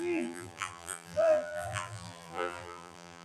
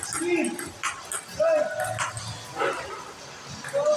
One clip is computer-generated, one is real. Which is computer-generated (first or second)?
first